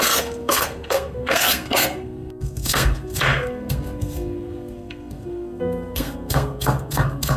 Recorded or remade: remade